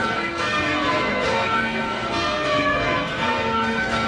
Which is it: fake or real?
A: fake